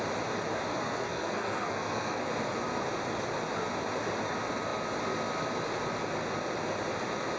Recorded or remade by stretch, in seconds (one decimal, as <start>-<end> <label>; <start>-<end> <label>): 0.0-0.7 recorded; 0.7-2.3 remade; 2.3-7.4 recorded